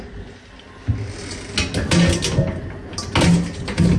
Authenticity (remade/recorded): recorded